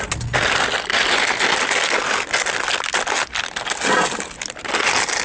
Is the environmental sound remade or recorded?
recorded